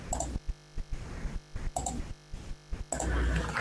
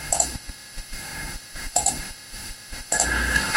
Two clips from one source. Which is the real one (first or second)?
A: first